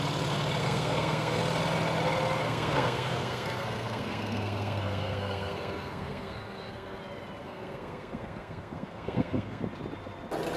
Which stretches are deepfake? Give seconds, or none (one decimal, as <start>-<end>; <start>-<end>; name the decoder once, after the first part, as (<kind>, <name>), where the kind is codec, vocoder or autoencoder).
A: 0.6-1.4 (codec, SNAC); 2.4-7.0; 7.4-9.6